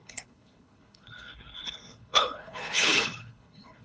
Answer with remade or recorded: remade